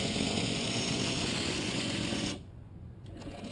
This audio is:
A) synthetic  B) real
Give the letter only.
A